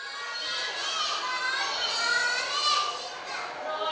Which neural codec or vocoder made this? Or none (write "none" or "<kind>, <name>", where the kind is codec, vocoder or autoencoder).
none